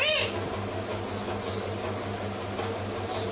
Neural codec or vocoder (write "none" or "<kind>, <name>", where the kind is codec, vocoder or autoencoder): none